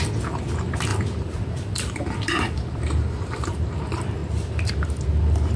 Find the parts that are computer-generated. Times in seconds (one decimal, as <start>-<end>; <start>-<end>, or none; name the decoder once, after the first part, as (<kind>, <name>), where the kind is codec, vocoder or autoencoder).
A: 0.9-3.6 (vocoder, BigVGAN v2)